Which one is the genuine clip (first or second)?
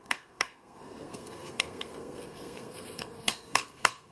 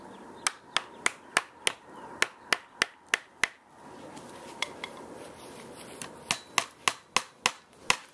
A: second